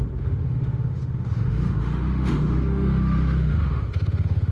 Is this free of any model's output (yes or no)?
no